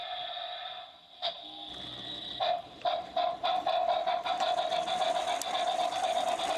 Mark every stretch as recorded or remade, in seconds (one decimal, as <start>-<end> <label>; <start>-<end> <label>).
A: 0.0-2.3 recorded; 2.3-5.2 remade; 5.2-6.6 recorded